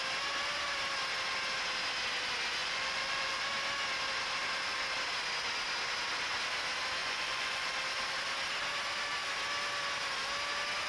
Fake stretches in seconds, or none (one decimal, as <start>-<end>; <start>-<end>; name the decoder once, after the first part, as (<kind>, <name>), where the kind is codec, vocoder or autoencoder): 2.6-3.4 (vocoder, Vocos); 7.0-7.7

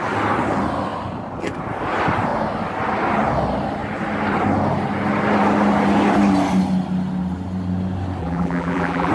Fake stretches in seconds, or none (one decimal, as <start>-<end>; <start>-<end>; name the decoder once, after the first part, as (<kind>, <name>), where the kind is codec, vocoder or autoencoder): 8.2-9.1 (vocoder, BigVGAN v2)

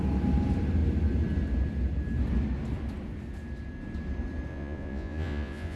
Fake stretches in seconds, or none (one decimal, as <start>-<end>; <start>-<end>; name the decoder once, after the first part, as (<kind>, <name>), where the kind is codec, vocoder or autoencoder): 4.5-5.8 (vocoder, Vocos)

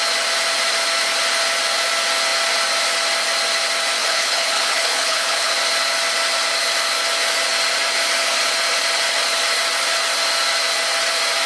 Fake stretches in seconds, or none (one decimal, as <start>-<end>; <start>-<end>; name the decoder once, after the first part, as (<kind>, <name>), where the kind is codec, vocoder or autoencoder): 4.0-5.5 (codec, HILCodec)

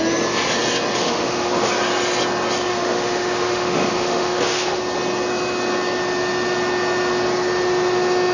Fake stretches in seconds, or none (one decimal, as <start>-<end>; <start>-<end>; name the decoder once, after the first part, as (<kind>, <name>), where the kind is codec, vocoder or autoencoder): 1.0-1.7 (autoencoder, DAC-VAE); 2.7-4.8